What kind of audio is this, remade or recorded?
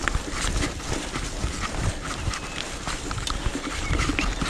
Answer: recorded